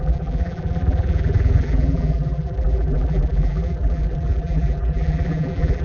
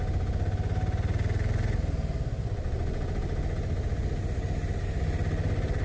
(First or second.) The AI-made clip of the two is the first